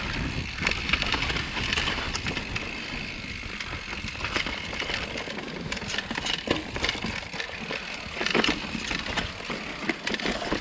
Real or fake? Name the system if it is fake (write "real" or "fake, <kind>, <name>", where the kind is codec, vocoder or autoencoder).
real